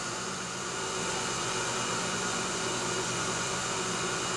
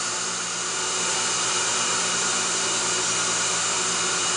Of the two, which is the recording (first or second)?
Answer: second